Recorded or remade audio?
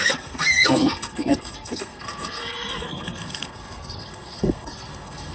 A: remade